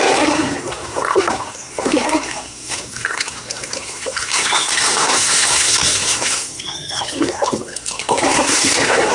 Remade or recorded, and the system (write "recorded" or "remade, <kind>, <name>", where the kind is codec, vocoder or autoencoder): remade, codec, SNAC